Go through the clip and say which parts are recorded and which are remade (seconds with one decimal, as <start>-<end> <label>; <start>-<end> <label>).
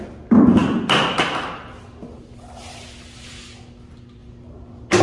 0.0-5.0 recorded